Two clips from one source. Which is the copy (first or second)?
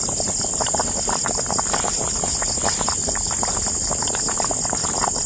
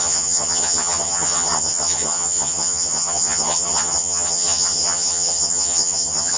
second